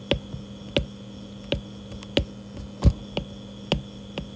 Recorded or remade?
recorded